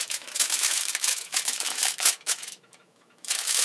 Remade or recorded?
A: remade